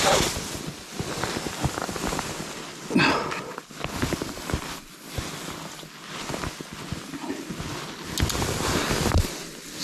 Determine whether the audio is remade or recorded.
recorded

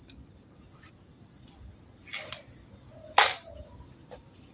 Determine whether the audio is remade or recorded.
recorded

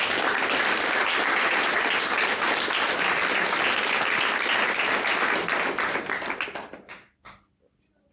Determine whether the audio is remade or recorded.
recorded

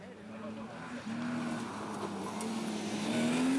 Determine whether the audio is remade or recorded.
recorded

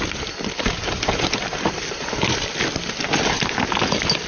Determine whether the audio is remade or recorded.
recorded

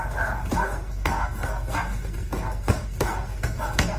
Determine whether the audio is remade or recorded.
remade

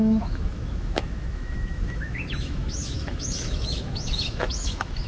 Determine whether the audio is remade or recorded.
remade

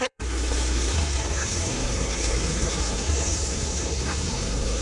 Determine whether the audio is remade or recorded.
remade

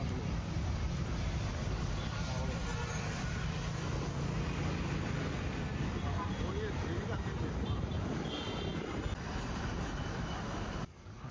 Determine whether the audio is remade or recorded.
recorded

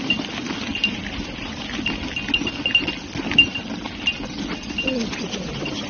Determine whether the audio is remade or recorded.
recorded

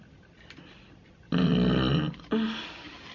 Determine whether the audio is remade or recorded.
recorded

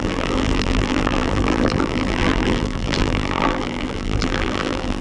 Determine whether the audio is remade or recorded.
remade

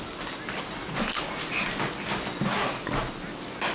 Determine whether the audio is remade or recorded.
recorded